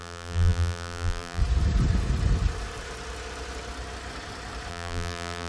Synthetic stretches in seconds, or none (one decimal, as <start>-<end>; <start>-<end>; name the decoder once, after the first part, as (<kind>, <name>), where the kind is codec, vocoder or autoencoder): 0.0-1.4 (vocoder, BigVGAN v2); 4.7-5.5